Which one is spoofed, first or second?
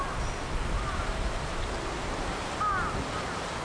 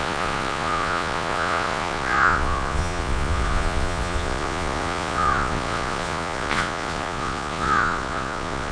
second